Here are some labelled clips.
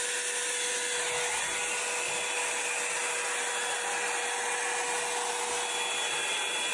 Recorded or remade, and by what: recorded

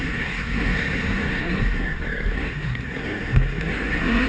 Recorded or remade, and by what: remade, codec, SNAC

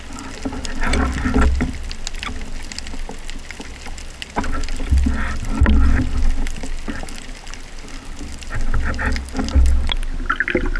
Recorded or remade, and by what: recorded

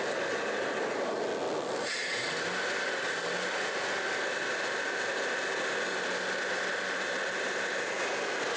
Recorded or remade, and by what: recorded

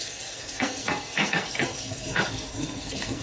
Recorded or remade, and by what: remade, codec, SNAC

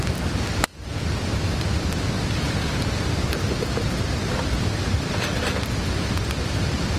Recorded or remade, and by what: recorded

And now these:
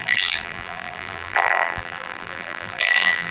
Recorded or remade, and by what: remade, vocoder, BigVGAN v2